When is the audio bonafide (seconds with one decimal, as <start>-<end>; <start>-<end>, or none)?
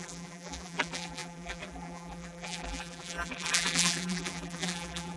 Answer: none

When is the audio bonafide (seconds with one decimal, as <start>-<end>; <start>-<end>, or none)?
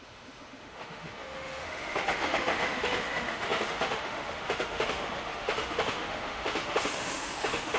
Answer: none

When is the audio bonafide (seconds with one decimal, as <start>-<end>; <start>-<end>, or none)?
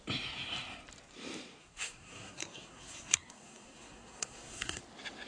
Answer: 0.0-1.6; 4.8-5.3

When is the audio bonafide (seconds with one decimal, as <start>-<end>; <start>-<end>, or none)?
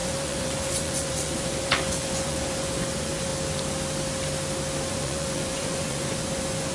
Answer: 3.3-4.9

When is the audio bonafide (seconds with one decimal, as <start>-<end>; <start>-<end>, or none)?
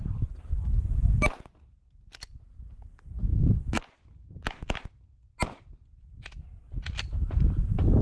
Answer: 0.0-8.0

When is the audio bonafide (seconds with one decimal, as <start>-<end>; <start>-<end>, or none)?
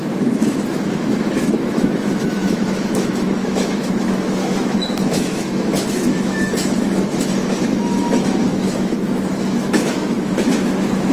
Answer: none